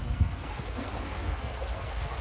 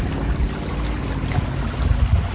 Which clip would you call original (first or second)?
second